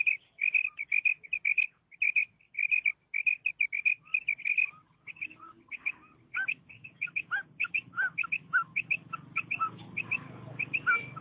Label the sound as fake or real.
real